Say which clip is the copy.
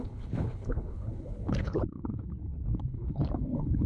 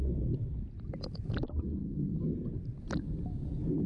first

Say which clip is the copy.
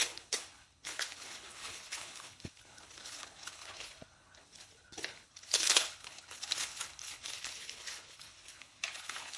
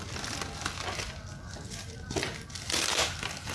first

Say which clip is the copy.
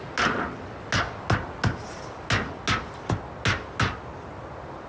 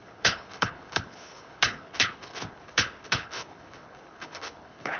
second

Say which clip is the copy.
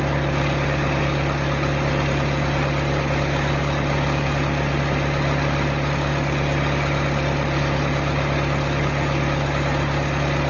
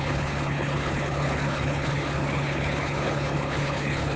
second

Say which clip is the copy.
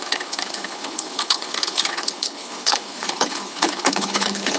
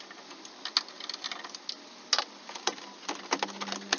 first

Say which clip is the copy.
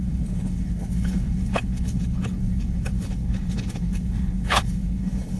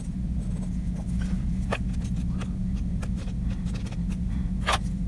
first